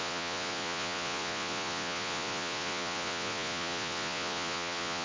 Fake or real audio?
fake